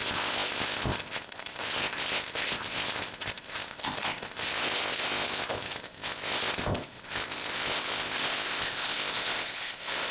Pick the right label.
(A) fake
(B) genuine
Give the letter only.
A